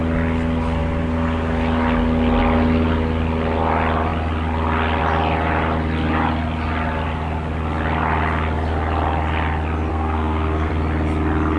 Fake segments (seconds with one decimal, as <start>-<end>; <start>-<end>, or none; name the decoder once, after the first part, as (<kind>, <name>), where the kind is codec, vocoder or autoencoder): 9.9-10.7 (codec, SNAC)